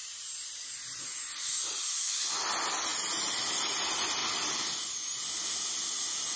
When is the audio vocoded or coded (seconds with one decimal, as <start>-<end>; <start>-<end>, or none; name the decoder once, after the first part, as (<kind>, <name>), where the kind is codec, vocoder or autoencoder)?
none